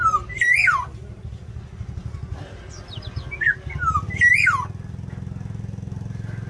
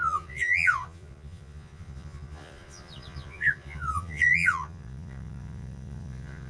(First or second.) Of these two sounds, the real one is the first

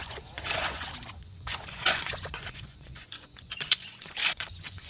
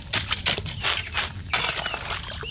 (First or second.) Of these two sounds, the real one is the second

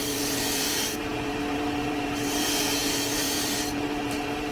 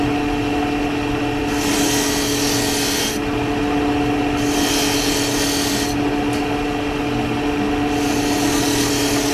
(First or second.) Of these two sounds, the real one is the second